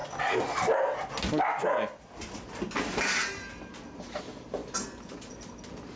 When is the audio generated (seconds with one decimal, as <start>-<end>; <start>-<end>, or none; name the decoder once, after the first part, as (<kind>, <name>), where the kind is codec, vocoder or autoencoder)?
3.6-6.0 (vocoder, BigVGAN v2)